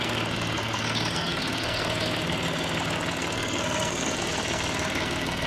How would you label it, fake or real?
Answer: fake